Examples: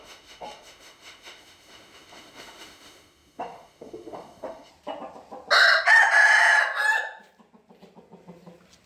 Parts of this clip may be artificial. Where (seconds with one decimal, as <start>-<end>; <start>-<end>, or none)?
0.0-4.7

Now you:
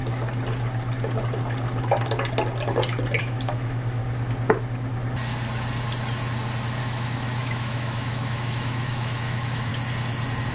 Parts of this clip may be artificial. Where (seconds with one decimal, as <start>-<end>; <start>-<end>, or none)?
3.2-4.0; 6.8-9.7

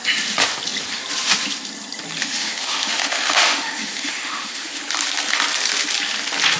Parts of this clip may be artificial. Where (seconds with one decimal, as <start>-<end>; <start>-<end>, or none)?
2.2-4.8

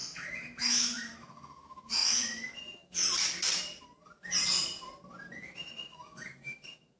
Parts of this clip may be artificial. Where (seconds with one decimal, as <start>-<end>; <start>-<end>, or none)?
0.0-3.0; 5.4-7.0